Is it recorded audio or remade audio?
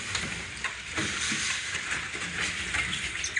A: remade